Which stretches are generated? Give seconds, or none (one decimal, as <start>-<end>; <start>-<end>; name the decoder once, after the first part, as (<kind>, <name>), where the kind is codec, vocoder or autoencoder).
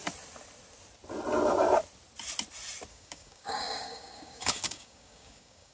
2.9-5.7 (codec, DAC)